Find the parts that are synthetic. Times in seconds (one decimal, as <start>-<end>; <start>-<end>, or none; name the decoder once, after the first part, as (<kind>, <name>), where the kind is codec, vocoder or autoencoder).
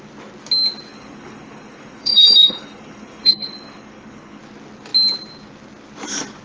0.9-4.4 (codec, HILCodec)